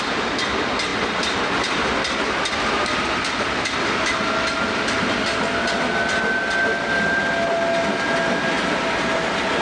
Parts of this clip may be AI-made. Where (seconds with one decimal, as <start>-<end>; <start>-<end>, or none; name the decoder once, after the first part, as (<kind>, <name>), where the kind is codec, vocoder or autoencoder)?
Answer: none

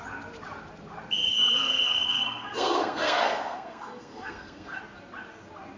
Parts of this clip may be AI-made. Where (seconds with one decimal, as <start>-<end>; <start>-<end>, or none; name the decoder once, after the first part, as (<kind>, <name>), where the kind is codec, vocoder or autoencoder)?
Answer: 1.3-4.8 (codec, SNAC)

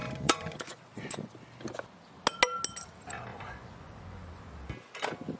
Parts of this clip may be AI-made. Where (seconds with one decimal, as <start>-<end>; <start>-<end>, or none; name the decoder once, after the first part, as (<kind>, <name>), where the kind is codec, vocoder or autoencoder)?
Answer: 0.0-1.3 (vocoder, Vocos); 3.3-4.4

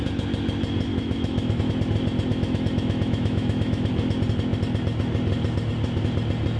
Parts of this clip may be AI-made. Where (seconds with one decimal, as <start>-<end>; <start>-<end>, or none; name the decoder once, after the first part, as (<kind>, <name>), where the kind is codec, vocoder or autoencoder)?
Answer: 0.9-1.7 (autoencoder, DAC-VAE); 2.3-3.9

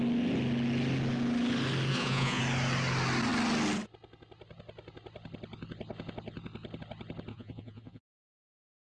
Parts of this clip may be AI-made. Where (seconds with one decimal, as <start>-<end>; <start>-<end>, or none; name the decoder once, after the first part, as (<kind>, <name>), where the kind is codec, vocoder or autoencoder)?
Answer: 1.9-2.4 (vocoder, Vocos); 7.3-8.0

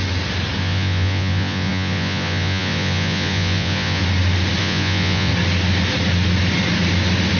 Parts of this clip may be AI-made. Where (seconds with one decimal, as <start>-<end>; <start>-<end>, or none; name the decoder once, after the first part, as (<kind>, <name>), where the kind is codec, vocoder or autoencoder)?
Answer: 0.6-4.0 (vocoder, Vocos); 4.6-5.3